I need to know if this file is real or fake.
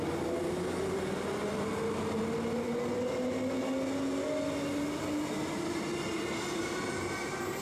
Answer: real